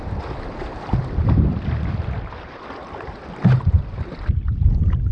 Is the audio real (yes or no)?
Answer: yes